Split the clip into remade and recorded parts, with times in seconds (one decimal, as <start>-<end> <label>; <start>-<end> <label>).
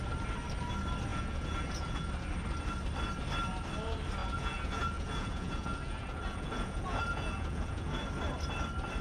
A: 0.0-1.1 recorded; 1.1-2.1 remade; 2.1-4.2 recorded; 4.2-8.1 remade; 8.1-9.0 recorded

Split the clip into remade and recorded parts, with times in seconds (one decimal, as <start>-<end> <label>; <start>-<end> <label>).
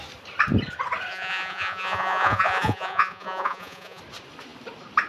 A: 0.0-1.1 recorded; 1.1-4.0 remade; 4.0-5.1 recorded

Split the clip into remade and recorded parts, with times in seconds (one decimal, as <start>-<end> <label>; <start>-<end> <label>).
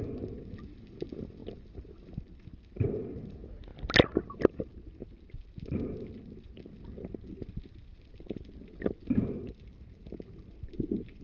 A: 0.0-11.2 recorded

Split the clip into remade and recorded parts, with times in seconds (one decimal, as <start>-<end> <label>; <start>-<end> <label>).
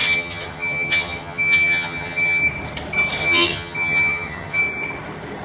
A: 0.0-2.4 remade; 2.4-3.2 recorded; 3.2-4.6 remade; 4.6-5.4 recorded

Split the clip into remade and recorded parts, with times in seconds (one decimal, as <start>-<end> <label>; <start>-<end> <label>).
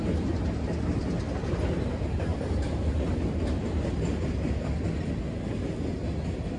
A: 0.0-6.6 recorded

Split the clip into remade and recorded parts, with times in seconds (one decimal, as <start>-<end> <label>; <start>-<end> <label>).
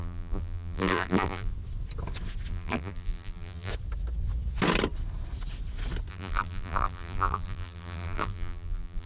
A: 0.0-1.5 remade; 1.5-2.5 recorded; 2.5-3.7 remade; 3.7-6.1 recorded; 6.1-9.1 remade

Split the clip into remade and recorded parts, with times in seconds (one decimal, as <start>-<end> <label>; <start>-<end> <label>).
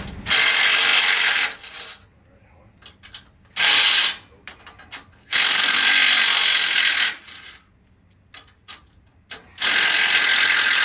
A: 0.0-5.2 recorded; 5.2-5.8 remade; 5.8-10.8 recorded